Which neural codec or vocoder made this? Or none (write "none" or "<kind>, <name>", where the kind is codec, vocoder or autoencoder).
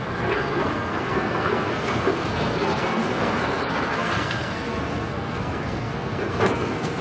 codec, SNAC